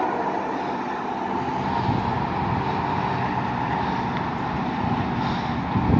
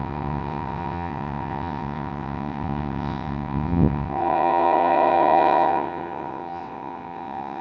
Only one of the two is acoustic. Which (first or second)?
first